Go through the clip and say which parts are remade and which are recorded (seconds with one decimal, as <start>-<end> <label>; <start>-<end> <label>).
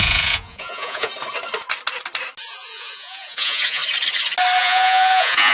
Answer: 0.0-1.1 remade; 1.1-2.4 recorded; 2.4-3.8 remade; 3.8-4.6 recorded; 4.6-5.5 remade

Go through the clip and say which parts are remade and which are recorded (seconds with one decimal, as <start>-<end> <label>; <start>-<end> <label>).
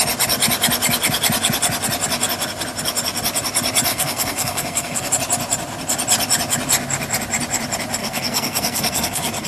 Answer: 0.0-3.9 recorded; 3.9-5.1 remade; 5.1-8.0 recorded; 8.0-9.5 remade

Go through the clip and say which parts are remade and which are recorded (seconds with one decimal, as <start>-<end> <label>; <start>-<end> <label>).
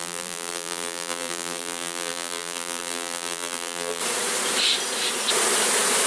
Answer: 0.0-4.0 remade; 4.0-6.1 recorded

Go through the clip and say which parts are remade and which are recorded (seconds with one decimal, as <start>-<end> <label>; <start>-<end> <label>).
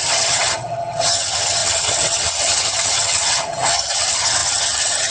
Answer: 0.0-5.1 remade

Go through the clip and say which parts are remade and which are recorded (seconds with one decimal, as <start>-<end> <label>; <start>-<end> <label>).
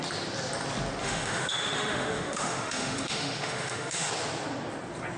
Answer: 0.0-1.0 recorded; 1.0-4.1 remade; 4.1-5.2 recorded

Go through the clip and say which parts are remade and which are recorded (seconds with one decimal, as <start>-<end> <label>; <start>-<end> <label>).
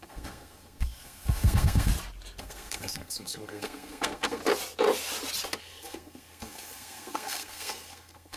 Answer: 0.0-1.9 remade; 1.9-2.4 recorded; 2.4-4.4 remade; 4.4-5.6 recorded; 5.6-8.4 remade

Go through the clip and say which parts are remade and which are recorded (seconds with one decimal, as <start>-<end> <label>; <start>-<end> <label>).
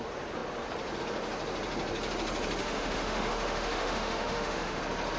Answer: 0.0-2.6 recorded; 2.6-4.8 remade; 4.8-5.2 recorded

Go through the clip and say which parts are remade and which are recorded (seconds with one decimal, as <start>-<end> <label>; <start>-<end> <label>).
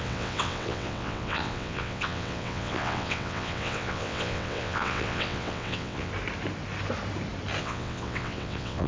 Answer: 0.0-6.1 remade; 6.1-7.6 recorded; 7.6-8.9 remade